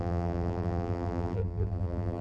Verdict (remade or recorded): remade